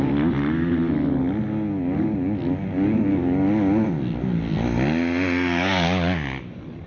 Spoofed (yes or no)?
no